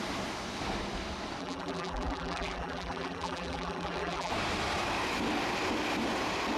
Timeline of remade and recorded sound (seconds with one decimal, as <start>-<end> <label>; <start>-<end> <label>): 0.0-1.4 recorded; 1.4-4.3 remade; 4.3-6.6 recorded